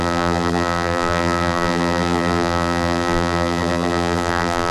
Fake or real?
fake